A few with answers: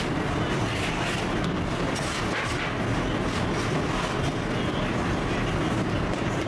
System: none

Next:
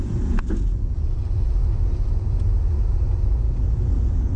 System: vocoder, Vocos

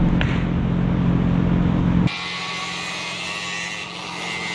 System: none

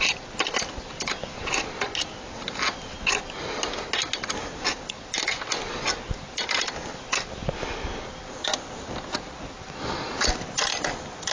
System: none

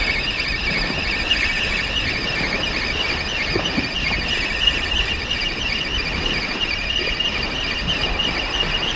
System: vocoder, BigVGAN v2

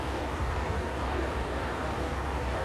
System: codec, DAC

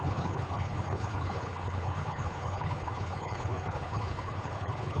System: codec, HILCodec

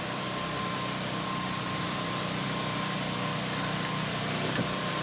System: vocoder, BigVGAN v2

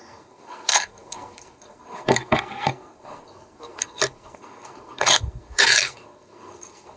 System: codec, SNAC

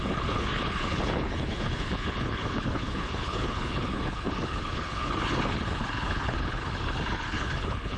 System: codec, HILCodec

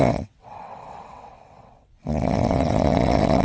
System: vocoder, WaveNeXt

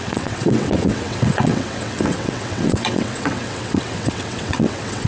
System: vocoder, WaveNeXt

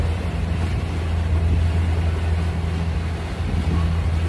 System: none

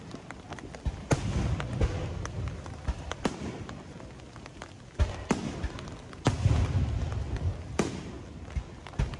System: none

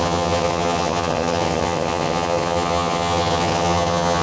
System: vocoder, HiFi-GAN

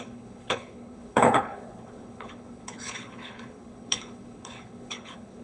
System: codec, HILCodec